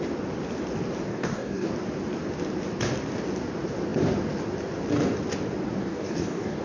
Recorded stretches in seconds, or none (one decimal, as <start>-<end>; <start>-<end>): 0.0-1.1; 1.7-5.8